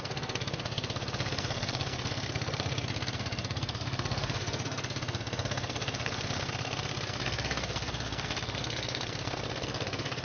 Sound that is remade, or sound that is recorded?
remade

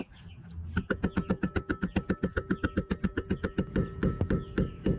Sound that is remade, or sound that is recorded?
recorded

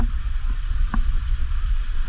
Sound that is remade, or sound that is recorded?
recorded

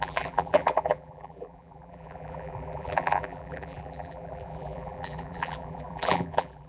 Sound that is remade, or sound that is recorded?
remade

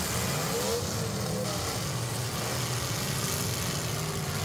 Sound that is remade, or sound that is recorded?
recorded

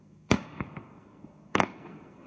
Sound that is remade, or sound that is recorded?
remade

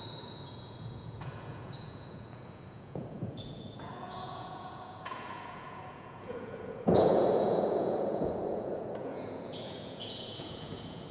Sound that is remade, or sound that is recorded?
remade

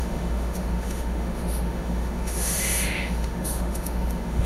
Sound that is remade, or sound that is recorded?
remade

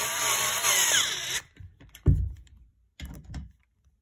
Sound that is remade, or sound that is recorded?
remade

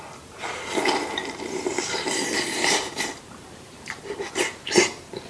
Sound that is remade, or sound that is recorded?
remade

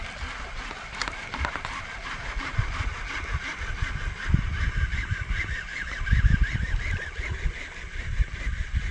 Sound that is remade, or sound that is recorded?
recorded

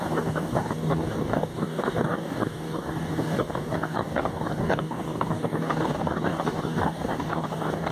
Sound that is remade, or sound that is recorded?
remade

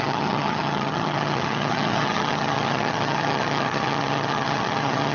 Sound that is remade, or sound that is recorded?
remade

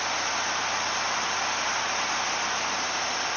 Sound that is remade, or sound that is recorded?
recorded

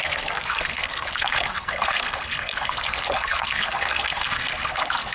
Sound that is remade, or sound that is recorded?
remade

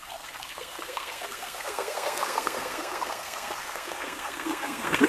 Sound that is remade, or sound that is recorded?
remade